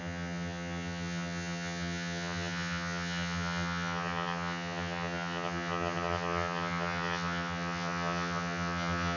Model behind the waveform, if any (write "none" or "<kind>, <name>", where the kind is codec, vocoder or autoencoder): vocoder, HiFi-GAN